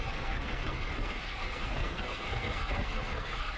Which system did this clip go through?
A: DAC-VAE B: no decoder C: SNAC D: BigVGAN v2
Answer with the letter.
C